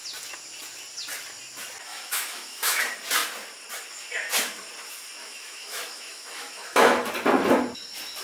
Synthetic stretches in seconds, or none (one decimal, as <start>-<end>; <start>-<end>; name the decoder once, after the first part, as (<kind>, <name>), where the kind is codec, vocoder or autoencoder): 1.9-2.8 (autoencoder, DAC-VAE); 5.2-7.1